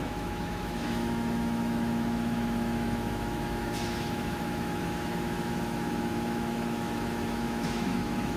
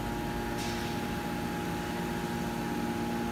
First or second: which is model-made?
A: first